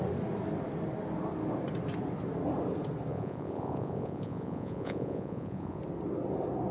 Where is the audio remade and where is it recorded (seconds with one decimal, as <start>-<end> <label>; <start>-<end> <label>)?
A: 0.0-3.1 recorded; 3.1-5.8 remade; 5.8-6.7 recorded